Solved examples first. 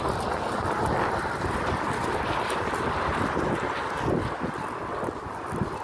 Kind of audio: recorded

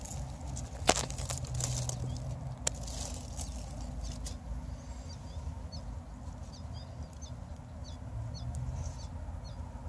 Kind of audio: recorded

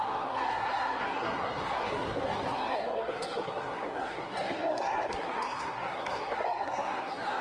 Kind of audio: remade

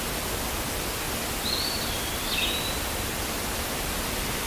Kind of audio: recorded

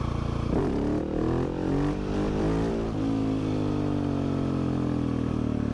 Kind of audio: recorded